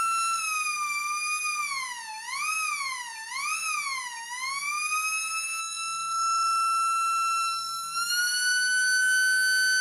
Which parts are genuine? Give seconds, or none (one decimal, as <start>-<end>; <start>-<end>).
0.0-5.6; 8.1-9.8